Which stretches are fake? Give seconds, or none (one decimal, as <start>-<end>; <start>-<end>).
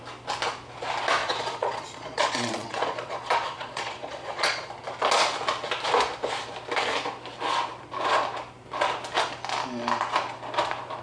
1.2-4.7